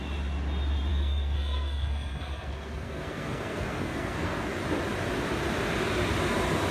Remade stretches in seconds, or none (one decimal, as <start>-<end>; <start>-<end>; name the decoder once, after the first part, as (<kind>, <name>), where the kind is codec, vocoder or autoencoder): 0.9-4.6 (codec, SNAC)